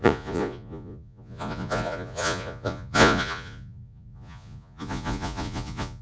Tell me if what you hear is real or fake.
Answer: fake